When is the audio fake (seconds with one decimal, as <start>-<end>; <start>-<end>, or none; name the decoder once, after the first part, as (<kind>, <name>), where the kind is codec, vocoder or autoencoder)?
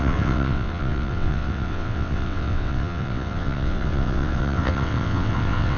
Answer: 0.0-5.8 (vocoder, WaveNeXt)